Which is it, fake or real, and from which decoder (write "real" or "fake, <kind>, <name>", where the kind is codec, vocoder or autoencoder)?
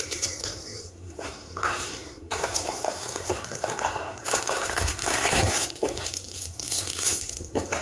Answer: fake, codec, SNAC